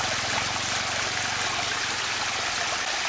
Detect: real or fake real